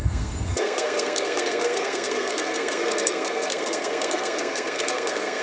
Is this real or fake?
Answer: fake